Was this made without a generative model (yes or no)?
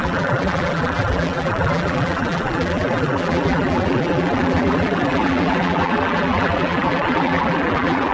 no